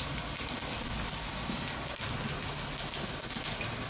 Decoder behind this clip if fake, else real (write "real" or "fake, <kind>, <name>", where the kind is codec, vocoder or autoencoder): real